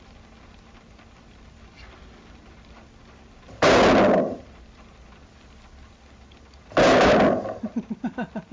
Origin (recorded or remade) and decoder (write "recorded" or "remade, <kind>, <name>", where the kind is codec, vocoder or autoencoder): recorded